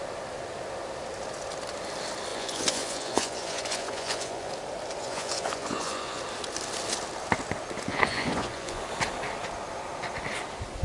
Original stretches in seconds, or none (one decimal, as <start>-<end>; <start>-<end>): 0.0-2.3; 4.5-5.0; 6.2-7.9; 8.8-10.8